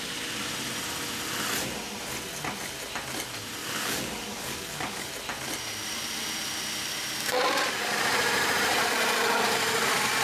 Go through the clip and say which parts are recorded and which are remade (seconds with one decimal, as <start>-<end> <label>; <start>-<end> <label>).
0.0-3.6 recorded; 3.6-5.1 remade; 5.1-10.2 recorded